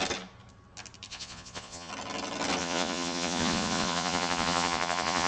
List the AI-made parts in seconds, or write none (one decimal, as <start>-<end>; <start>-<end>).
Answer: 1.1-1.9; 2.6-5.3